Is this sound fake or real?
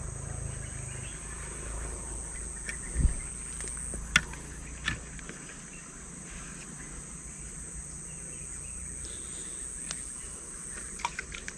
real